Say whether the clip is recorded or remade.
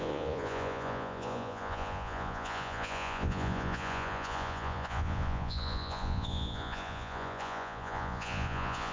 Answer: remade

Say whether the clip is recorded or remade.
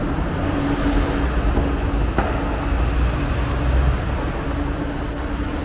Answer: recorded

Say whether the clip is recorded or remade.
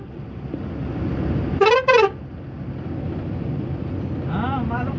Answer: recorded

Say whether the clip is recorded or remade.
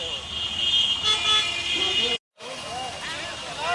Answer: recorded